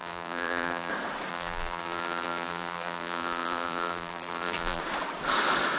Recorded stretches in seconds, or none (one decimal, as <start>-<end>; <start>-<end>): 0.9-1.3; 4.8-5.8